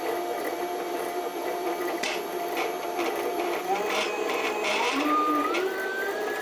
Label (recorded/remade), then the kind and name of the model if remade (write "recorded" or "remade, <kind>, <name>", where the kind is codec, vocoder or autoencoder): remade, vocoder, BigVGAN v2